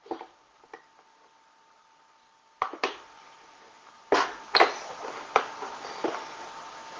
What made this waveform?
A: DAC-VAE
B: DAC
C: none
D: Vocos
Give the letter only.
C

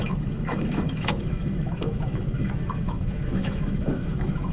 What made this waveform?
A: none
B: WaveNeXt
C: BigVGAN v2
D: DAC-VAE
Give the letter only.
D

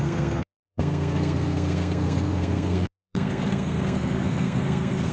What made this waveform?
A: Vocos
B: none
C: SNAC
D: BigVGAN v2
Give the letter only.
C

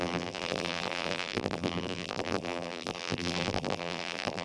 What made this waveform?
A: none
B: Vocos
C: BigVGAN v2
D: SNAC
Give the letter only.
C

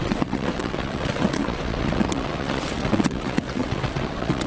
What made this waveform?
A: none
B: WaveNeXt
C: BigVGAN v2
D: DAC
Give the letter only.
B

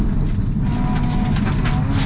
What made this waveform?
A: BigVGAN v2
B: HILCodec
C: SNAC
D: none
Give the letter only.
D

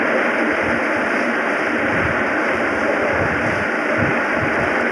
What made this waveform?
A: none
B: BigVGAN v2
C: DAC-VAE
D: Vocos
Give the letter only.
A